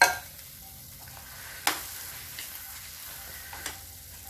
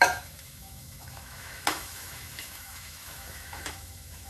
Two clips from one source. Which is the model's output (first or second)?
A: second